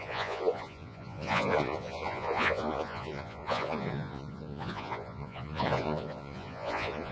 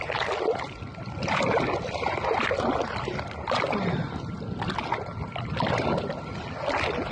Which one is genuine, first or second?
second